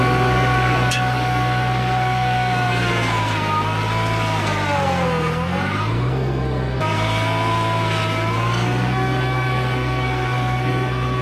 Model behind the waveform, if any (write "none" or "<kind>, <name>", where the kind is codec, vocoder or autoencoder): codec, SNAC